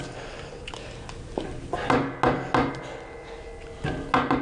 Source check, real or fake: real